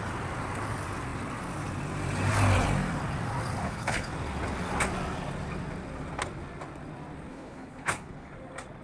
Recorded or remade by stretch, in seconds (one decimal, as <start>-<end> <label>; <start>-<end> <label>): 0.0-3.6 recorded; 3.6-4.1 remade; 4.1-7.3 recorded; 7.3-8.3 remade; 8.3-8.8 recorded